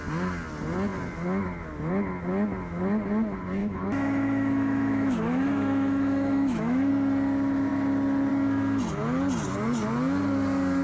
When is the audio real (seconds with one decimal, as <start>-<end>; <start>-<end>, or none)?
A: 0.0-3.6; 6.9-10.8